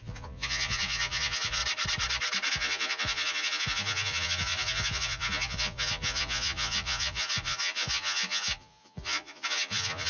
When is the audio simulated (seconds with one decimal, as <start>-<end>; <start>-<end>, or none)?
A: 0.0-1.6; 2.5-10.1